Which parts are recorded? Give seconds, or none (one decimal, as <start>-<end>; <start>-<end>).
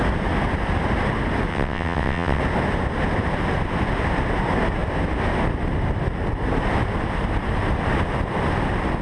0.0-1.5; 2.4-9.0